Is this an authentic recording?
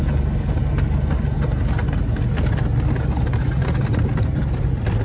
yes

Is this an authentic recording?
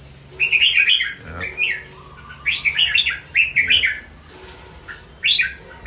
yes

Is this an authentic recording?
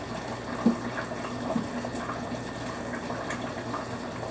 yes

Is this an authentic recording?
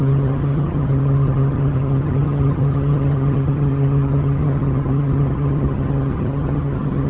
no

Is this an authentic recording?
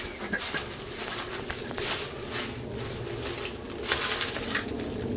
yes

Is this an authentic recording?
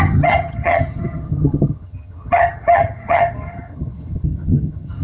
no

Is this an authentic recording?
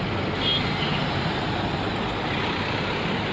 yes